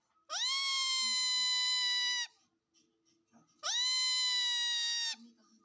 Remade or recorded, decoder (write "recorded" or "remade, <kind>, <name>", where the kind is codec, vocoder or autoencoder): recorded